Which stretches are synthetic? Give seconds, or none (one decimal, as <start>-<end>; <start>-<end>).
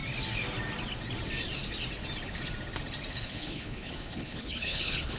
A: 3.1-5.2